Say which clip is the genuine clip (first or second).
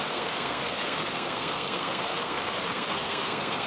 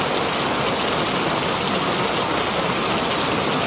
second